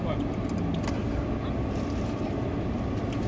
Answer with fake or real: real